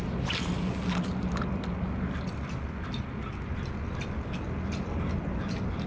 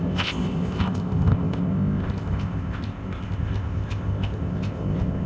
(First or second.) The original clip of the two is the first